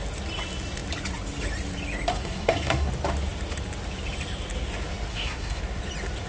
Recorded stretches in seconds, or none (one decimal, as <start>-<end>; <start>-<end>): 0.0-2.1; 2.9-5.1; 5.6-6.3